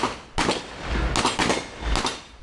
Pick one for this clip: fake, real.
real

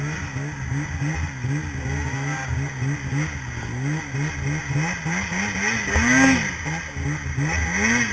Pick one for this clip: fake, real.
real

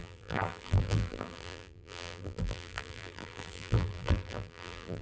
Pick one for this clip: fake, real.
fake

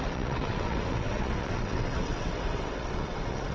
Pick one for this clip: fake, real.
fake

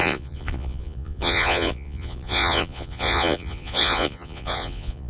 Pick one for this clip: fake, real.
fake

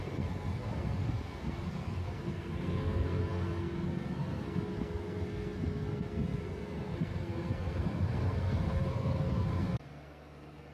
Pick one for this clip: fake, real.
fake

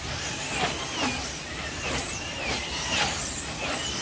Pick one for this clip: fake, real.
real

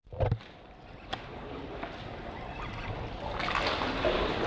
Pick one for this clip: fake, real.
real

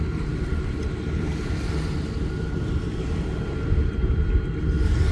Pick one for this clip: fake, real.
fake